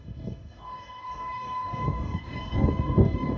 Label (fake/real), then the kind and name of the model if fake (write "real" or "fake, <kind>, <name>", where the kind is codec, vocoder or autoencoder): fake, codec, DAC